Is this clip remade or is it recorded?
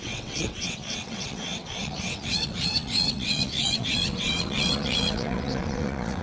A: remade